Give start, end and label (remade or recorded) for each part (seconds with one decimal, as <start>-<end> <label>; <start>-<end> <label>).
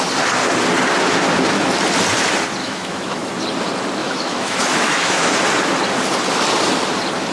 0.0-2.6 recorded; 2.6-3.3 remade; 3.3-4.0 recorded; 4.0-5.3 remade; 5.3-7.3 recorded